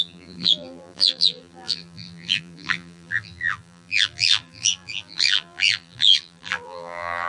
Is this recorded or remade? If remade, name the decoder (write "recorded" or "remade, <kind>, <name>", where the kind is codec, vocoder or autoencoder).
remade, vocoder, BigVGAN v2